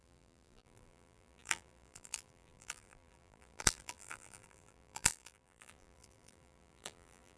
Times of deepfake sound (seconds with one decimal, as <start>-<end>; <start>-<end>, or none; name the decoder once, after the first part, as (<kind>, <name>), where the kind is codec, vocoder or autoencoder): 0.0-7.4 (vocoder, BigVGAN v2)